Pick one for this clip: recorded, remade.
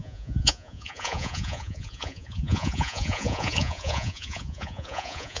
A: remade